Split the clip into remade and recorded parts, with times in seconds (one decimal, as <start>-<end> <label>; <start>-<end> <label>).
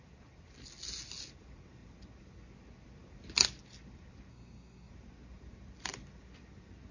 0.0-4.3 recorded; 4.3-4.9 remade; 4.9-6.9 recorded